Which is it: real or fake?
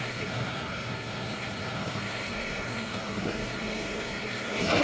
fake